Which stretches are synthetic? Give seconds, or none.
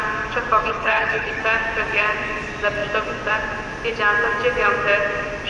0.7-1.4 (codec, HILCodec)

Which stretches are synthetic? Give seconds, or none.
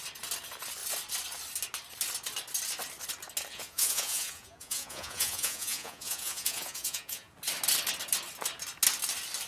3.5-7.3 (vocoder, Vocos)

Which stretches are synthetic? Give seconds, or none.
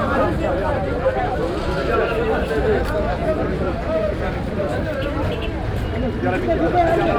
3.2-4.8 (vocoder, BigVGAN v2)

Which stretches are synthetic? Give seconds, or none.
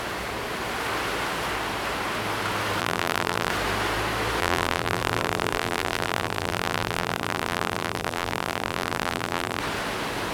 2.8-3.5 (vocoder, BigVGAN v2); 4.4-9.6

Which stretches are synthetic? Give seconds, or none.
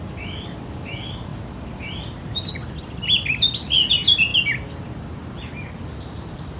0.0-4.3 (vocoder, BigVGAN v2); 5.3-6.6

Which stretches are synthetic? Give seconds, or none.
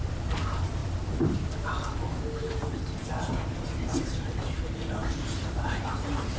none